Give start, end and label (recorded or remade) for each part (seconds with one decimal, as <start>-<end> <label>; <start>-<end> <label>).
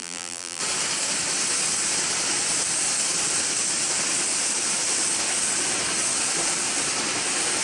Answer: 0.0-0.6 remade; 0.6-7.6 recorded